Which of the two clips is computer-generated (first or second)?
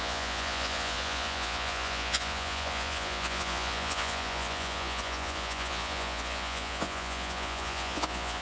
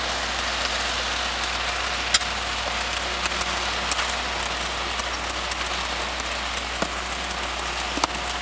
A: first